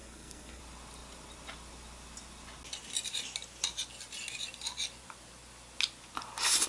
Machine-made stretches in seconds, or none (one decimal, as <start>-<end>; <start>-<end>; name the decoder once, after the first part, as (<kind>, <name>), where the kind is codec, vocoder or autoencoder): 0.0-0.6 (codec, SNAC)